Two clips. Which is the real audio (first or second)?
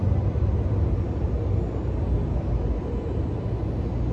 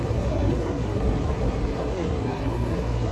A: first